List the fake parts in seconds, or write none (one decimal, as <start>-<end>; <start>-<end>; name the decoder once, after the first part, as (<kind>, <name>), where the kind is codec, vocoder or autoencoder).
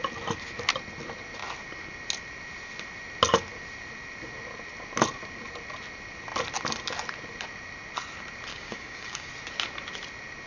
8.5-9.3 (codec, DAC)